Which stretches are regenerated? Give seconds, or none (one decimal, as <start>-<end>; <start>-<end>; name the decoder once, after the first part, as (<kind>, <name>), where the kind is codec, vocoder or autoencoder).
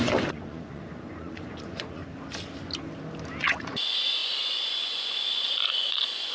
0.0-2.0 (vocoder, Vocos); 3.4-6.3